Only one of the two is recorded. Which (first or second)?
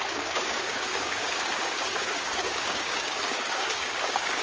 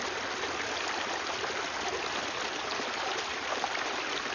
second